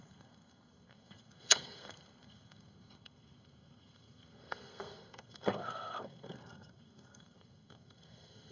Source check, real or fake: fake